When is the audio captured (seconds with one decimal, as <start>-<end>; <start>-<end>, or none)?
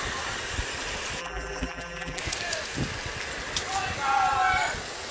0.0-1.2; 2.2-5.1